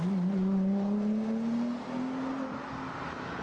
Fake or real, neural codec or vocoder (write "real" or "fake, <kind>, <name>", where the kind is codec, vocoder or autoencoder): real